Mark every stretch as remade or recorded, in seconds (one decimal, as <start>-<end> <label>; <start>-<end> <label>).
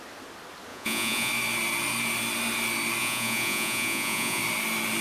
0.0-0.7 recorded; 0.7-1.3 remade; 1.3-3.0 recorded; 3.0-4.4 remade; 4.4-5.0 recorded